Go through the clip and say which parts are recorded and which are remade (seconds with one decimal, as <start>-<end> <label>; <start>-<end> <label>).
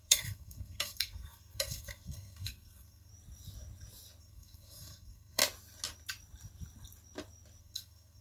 0.0-3.1 remade; 3.1-4.2 recorded; 4.2-5.4 remade; 5.4-7.6 recorded; 7.6-8.2 remade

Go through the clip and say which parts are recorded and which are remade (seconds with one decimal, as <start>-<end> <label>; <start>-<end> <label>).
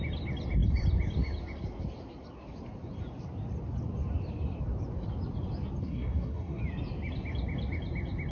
0.0-5.8 recorded; 5.8-6.6 remade; 6.6-8.3 recorded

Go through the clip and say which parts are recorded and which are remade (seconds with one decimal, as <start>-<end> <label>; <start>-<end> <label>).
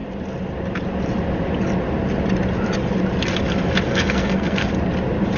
0.0-3.9 recorded; 3.9-4.7 remade; 4.7-5.4 recorded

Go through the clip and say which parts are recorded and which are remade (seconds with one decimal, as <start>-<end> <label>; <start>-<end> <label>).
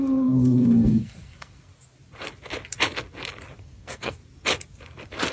0.0-1.7 remade; 1.7-3.6 recorded; 3.6-4.2 remade; 4.2-5.3 recorded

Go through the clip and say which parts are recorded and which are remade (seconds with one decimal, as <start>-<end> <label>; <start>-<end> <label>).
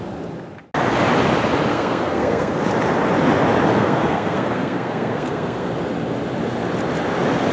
0.0-1.7 recorded; 1.7-2.6 remade; 2.6-3.7 recorded; 3.7-5.7 remade; 5.7-7.5 recorded